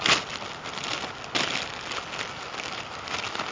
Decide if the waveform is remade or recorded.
recorded